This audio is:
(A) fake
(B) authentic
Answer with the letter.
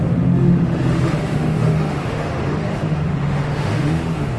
A